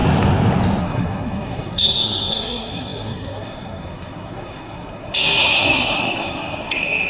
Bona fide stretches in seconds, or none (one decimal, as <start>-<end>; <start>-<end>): 0.0-0.8